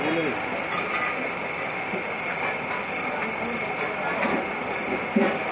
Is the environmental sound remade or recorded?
recorded